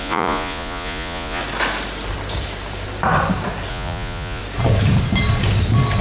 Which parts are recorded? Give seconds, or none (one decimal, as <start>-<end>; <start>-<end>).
1.4-3.7; 4.4-6.0